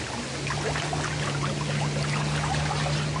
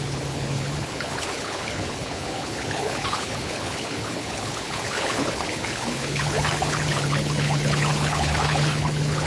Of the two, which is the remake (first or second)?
second